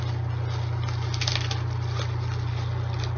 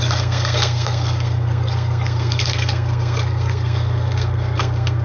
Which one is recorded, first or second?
first